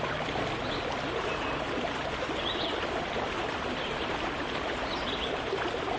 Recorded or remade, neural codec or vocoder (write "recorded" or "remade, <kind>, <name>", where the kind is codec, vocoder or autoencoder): recorded